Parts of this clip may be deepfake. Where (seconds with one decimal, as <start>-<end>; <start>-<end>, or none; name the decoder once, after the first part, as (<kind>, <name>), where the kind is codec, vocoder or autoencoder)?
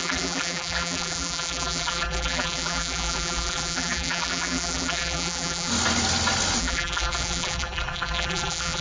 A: 0.0-5.7 (vocoder, BigVGAN v2); 6.6-8.8